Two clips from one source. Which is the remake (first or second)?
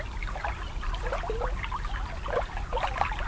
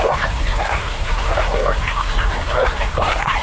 second